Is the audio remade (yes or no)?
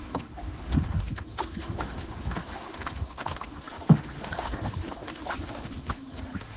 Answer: yes